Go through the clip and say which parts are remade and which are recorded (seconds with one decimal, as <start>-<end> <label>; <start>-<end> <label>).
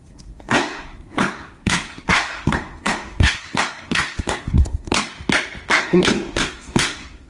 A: 0.0-5.1 remade; 5.1-5.8 recorded; 5.8-7.3 remade